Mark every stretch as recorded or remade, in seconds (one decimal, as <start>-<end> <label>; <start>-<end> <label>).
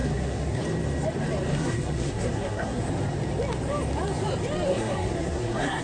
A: 0.0-0.6 remade; 0.6-1.5 recorded; 1.5-2.8 remade; 2.8-4.7 recorded; 4.7-5.8 remade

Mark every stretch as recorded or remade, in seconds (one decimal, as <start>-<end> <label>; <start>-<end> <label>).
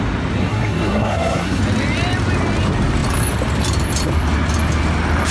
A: 0.0-0.4 recorded; 0.4-1.6 remade; 1.6-5.3 recorded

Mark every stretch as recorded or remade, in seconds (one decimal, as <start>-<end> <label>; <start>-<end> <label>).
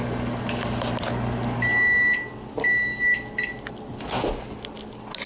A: 0.0-5.3 recorded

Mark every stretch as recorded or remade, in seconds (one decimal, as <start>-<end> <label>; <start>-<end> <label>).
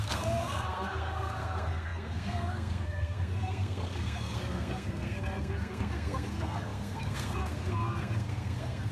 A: 0.0-8.9 remade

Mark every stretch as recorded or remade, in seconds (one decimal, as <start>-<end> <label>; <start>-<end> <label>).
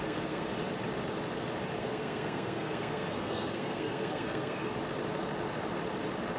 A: 0.0-0.5 remade; 0.5-1.8 recorded; 1.8-4.7 remade; 4.7-6.4 recorded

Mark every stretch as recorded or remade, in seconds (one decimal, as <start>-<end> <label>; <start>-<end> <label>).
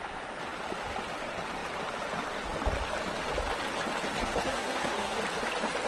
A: 0.0-4.2 recorded; 4.2-5.2 remade; 5.2-5.9 recorded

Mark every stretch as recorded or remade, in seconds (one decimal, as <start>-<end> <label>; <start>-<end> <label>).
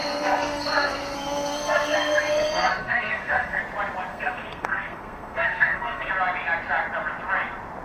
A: 0.0-3.6 remade; 3.6-4.1 recorded; 4.1-6.1 remade; 6.1-7.8 recorded